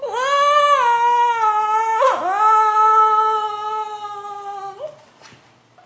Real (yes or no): yes